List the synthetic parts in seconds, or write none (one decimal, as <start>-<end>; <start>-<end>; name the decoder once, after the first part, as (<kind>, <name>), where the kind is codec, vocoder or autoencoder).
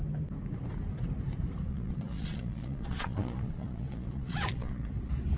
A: 1.7-4.9 (vocoder, Vocos)